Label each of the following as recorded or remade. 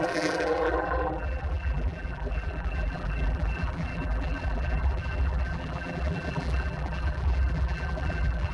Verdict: remade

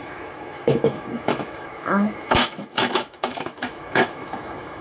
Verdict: remade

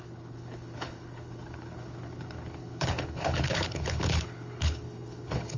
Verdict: remade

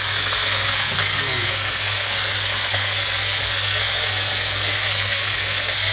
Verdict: remade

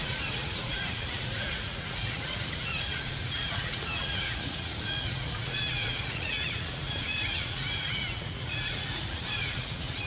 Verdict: remade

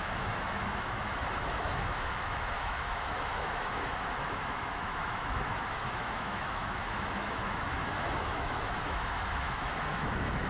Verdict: remade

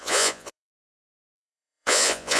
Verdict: remade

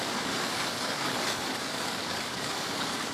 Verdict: remade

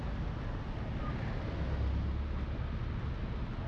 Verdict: recorded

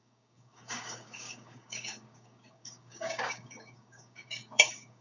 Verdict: remade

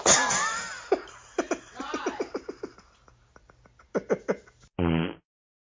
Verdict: recorded